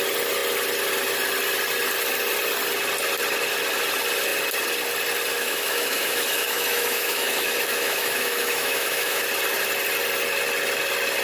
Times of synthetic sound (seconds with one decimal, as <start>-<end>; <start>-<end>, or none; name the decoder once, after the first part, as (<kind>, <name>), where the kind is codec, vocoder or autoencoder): 5.3-9.2 (autoencoder, DAC-VAE)